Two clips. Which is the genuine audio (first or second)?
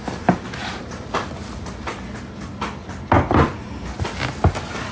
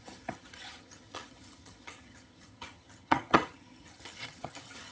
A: first